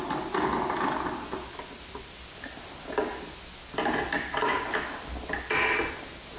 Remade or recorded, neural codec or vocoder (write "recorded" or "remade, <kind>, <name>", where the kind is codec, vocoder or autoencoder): recorded